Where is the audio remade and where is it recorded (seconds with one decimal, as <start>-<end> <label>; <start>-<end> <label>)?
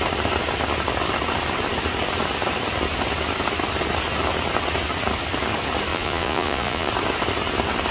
0.0-5.9 recorded; 5.9-6.9 remade; 6.9-7.9 recorded